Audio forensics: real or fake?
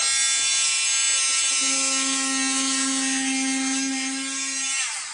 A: real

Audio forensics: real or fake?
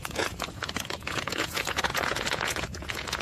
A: fake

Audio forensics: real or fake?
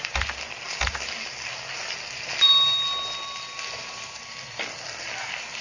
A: real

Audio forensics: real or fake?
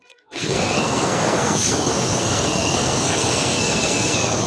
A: fake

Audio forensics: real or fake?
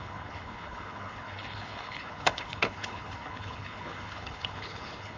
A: fake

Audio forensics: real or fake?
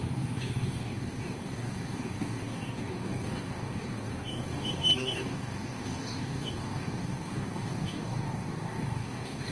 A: fake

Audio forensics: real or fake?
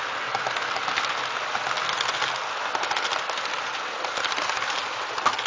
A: real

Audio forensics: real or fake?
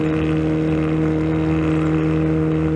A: real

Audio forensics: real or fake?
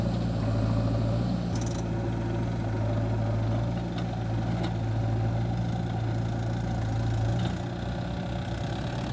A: real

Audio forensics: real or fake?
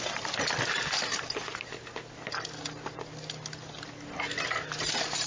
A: real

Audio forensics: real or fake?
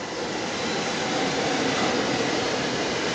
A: real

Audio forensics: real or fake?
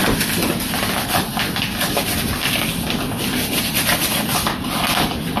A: real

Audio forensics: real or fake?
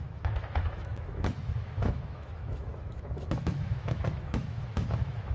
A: fake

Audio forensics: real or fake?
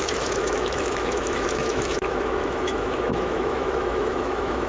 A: fake